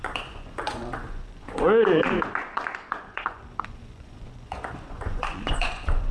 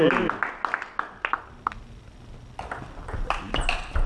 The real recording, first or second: second